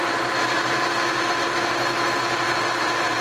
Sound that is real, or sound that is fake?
real